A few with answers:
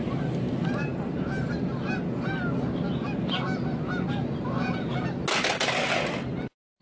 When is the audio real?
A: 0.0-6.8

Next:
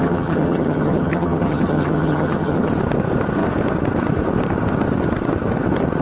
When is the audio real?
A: 2.7-6.0

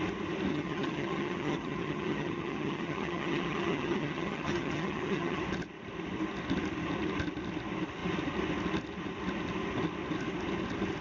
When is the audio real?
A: 0.0-0.5; 5.4-11.0

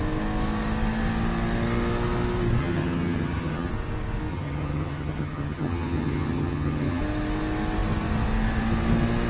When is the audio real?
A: 0.0-2.6; 3.7-4.3; 7.0-9.3

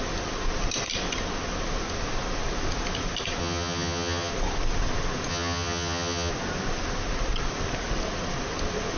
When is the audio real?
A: 0.0-3.4; 4.3-5.3; 6.3-9.0

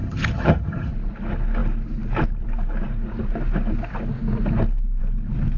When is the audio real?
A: 0.9-5.6

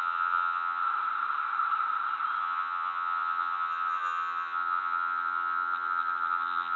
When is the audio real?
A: 0.8-2.4

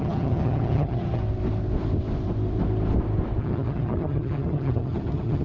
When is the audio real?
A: 1.2-3.4